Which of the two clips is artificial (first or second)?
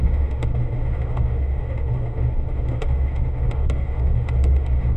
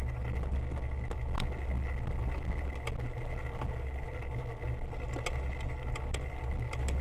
first